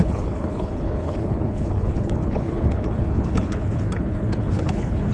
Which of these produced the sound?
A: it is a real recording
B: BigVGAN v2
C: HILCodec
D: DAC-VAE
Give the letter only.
C